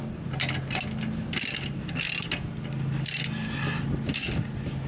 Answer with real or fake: real